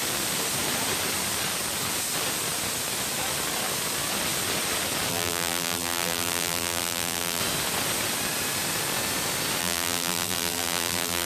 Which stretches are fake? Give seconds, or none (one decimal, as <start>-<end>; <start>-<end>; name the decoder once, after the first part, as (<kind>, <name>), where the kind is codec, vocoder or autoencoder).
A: 5.1-7.4 (vocoder, BigVGAN v2); 9.6-11.3